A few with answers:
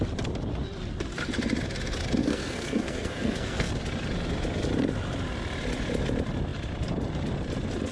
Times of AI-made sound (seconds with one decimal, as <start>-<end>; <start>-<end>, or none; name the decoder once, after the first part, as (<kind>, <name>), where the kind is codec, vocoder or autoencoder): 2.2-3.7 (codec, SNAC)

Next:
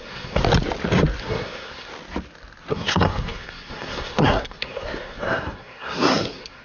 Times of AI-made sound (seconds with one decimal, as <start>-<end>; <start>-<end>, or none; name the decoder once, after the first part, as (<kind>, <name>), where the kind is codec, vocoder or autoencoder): 0.0-0.4 (codec, SNAC); 1.2-1.9; 2.7-6.6

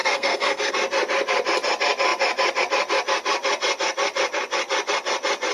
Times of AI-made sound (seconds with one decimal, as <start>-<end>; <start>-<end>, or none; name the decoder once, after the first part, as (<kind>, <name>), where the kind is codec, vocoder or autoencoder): 0.0-0.7 (codec, SNAC)